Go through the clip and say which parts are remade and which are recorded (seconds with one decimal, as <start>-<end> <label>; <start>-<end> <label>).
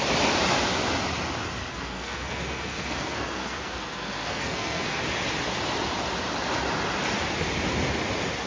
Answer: 0.0-1.7 recorded; 1.7-5.0 remade; 5.0-8.5 recorded